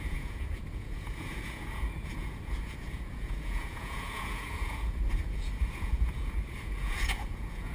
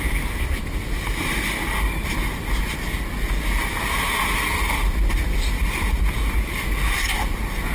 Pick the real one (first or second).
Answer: second